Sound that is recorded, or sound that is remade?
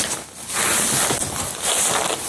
remade